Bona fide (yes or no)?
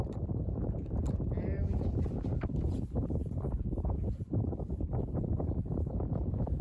no